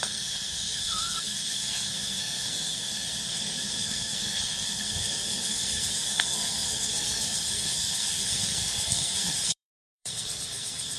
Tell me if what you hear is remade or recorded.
remade